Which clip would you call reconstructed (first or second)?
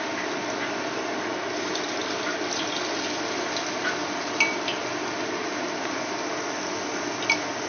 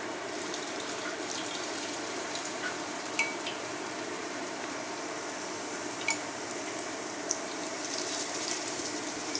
second